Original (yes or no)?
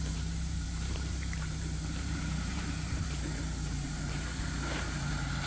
no